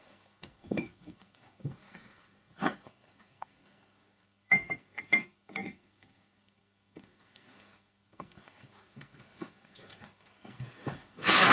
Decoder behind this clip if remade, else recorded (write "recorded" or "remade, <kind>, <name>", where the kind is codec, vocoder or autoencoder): remade, codec, SNAC